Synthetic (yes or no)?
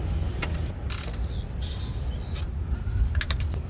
no